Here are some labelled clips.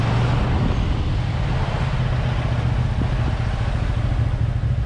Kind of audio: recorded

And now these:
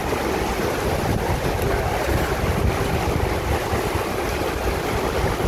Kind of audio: recorded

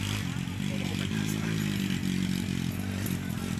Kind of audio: recorded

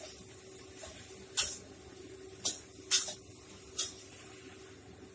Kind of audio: recorded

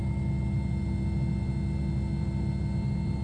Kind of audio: recorded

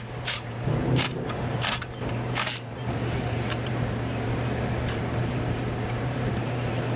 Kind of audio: remade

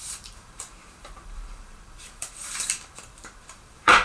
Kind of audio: remade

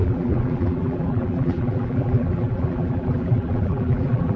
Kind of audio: remade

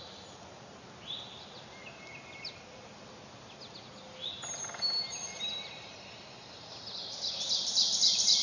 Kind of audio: recorded